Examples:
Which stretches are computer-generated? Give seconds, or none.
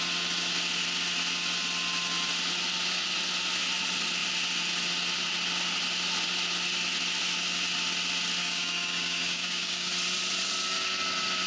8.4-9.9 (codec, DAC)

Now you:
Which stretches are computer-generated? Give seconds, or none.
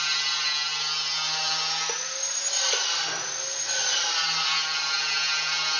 none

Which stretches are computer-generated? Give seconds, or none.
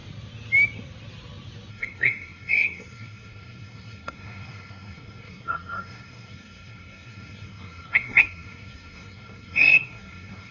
1.7-10.5 (codec, SNAC)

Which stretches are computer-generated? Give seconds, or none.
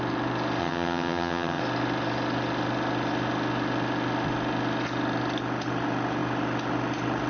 0.6-1.6 (vocoder, HiFi-GAN)